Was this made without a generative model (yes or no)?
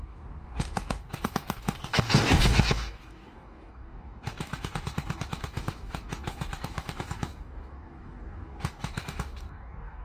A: no